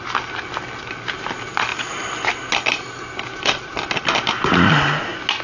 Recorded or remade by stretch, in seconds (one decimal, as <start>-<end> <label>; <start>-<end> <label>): 0.0-5.4 recorded